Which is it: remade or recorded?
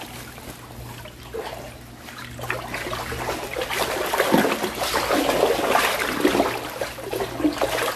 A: recorded